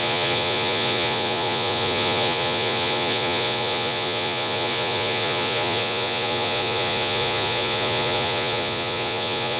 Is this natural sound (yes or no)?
no